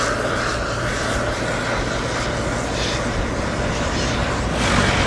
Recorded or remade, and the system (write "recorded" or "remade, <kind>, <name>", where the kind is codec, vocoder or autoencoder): recorded